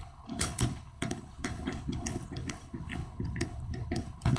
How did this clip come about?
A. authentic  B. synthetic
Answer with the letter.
B